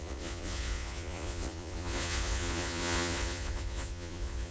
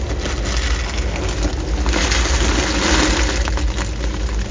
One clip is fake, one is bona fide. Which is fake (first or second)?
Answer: first